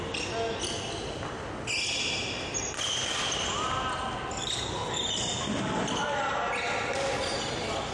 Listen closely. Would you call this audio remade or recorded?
recorded